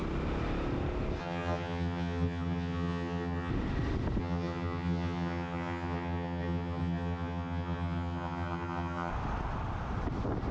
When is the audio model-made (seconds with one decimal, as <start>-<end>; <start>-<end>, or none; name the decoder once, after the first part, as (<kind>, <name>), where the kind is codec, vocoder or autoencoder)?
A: 1.2-3.5 (vocoder, HiFi-GAN); 4.2-9.1